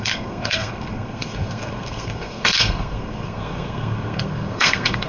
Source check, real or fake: fake